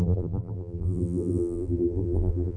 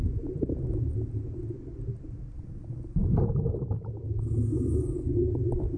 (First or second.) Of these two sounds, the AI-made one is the first